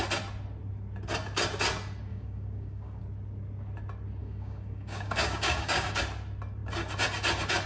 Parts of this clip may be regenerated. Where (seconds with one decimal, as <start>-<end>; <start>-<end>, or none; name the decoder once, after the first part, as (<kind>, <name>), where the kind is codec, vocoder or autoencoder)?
2.1-3.0 (codec, DAC); 4.2-6.0